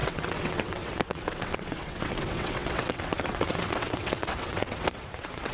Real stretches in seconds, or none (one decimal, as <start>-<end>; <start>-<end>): none